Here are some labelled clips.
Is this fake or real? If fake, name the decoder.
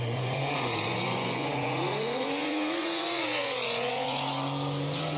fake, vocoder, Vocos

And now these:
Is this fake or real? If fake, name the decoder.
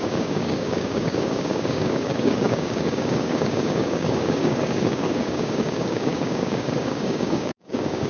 fake, codec, DAC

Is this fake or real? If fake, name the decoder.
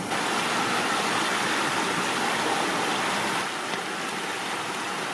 real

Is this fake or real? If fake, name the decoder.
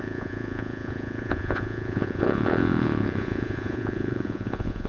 fake, vocoder, Vocos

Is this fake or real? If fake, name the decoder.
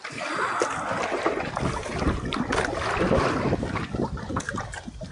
real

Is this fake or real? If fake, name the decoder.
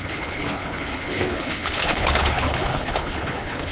fake, codec, HILCodec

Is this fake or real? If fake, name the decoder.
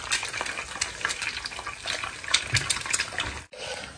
real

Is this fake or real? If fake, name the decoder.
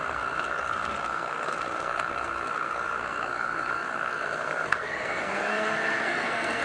fake, codec, SNAC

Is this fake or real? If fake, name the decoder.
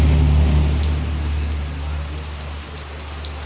real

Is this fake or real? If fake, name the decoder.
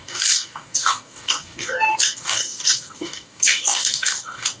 fake, codec, DAC